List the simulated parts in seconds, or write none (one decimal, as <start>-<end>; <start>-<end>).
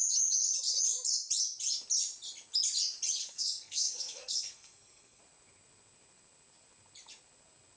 3.2-5.2